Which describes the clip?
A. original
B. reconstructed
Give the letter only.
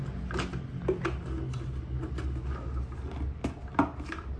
A